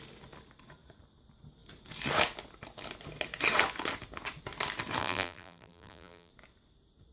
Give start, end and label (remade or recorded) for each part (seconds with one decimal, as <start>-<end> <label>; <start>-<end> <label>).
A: 0.0-5.0 recorded; 5.0-6.3 remade; 6.3-7.1 recorded